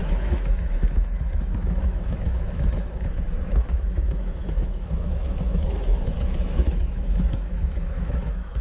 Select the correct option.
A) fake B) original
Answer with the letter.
A